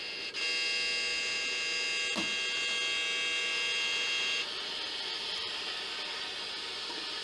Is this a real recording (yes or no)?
yes